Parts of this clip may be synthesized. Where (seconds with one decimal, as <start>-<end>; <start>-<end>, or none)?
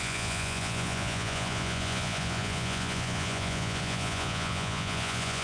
0.0-5.4